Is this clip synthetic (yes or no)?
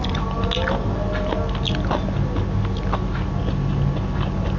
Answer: no